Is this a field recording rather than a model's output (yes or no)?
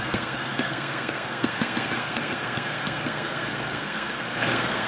no